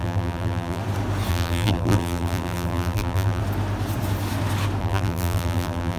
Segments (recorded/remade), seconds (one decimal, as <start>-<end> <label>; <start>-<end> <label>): 0.0-0.8 remade; 0.8-1.3 recorded; 1.3-3.4 remade; 3.4-4.8 recorded; 4.8-6.0 remade